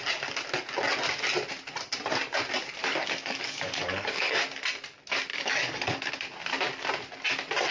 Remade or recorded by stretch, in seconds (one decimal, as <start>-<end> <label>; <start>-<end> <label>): 0.0-2.8 recorded; 2.8-4.4 remade; 4.4-5.3 recorded; 5.3-6.1 remade; 6.1-7.7 recorded